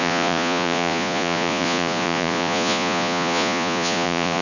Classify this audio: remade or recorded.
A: remade